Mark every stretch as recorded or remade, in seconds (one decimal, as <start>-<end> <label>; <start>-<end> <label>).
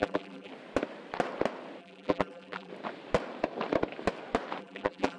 0.0-0.5 remade; 0.5-1.8 recorded; 1.8-2.7 remade; 2.7-4.6 recorded; 4.6-5.2 remade